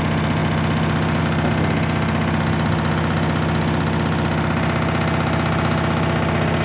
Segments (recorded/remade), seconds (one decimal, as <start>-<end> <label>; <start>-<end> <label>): 0.0-6.6 recorded